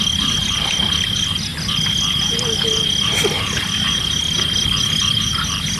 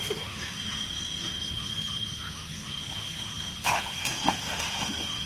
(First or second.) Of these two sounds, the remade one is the second